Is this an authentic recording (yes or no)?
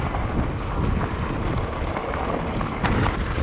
yes